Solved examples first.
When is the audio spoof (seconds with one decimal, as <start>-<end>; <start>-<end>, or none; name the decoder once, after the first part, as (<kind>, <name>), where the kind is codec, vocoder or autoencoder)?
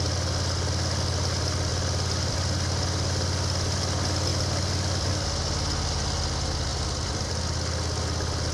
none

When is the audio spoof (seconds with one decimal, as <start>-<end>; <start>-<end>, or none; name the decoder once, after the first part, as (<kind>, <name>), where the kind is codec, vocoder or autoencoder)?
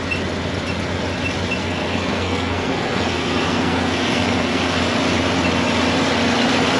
1.6-4.8 (codec, SNAC)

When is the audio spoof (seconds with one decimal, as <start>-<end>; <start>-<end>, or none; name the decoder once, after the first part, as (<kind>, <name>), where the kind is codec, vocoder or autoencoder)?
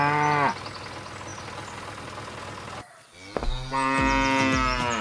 none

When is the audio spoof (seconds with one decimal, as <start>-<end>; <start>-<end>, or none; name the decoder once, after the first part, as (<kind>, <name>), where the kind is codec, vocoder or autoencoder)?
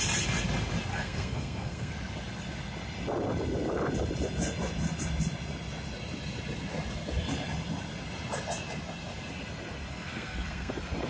0.9-1.9 (codec, SNAC); 9.9-10.7